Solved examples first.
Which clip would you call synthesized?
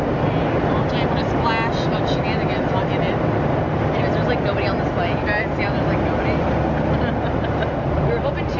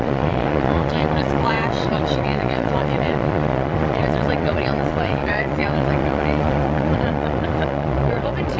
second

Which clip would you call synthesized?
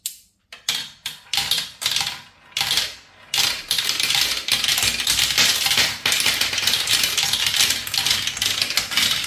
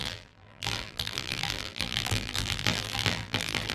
second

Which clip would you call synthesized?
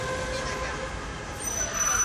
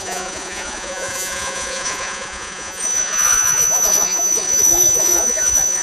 second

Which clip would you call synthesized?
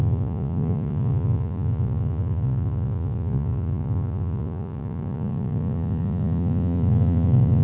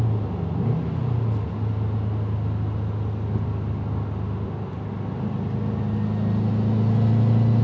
first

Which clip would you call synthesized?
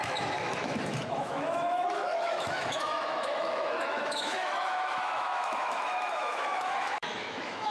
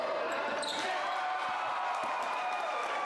first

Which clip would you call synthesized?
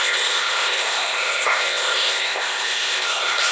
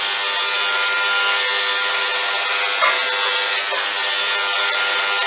first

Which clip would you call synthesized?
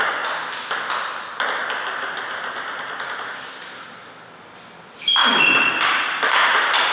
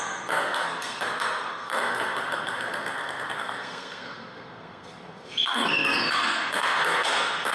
second